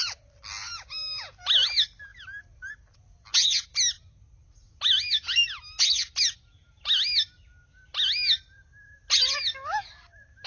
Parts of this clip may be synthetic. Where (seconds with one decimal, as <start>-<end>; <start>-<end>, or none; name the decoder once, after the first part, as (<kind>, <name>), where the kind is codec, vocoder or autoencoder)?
none